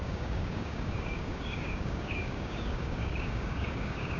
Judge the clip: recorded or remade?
remade